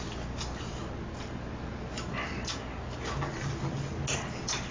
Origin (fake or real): real